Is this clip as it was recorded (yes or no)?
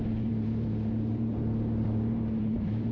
no